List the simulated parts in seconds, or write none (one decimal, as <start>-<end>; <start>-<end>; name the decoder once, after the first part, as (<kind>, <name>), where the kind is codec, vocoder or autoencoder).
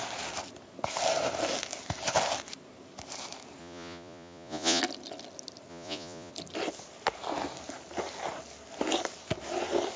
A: 3.6-4.8 (vocoder, Vocos); 5.7-6.3